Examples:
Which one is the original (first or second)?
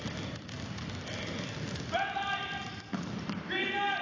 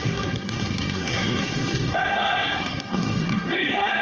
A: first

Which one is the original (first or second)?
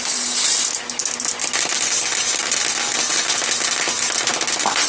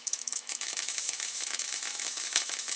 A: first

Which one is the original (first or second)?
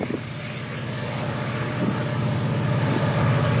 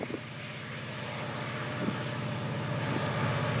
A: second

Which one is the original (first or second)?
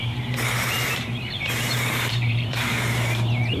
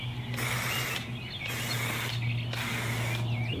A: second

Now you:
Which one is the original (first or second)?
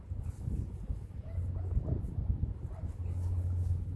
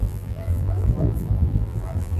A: first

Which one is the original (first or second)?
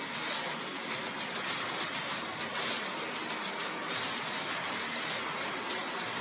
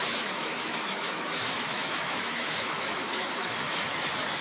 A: first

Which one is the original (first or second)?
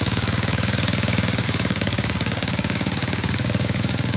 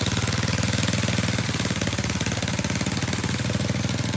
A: second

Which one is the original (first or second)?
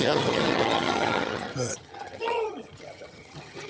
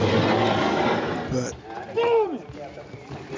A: second